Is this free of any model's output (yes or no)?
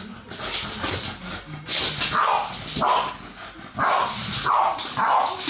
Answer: yes